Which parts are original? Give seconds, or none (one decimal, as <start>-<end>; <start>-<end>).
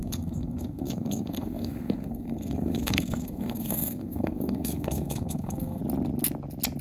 5.8-6.8